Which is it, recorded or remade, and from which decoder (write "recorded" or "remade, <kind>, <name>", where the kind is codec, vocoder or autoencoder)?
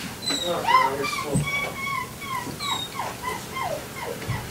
recorded